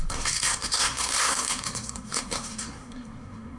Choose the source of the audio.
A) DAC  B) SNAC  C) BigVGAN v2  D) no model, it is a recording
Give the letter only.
B